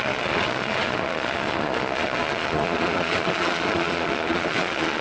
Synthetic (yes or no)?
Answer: yes